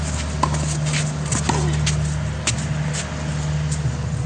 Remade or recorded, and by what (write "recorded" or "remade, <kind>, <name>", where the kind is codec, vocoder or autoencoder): recorded